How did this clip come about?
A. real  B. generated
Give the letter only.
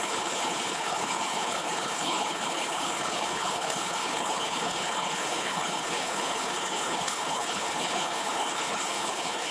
B